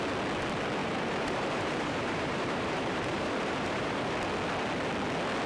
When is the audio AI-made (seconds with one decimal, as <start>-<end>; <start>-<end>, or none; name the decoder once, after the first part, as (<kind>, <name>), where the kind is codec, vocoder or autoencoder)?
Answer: 0.8-4.1 (vocoder, BigVGAN v2)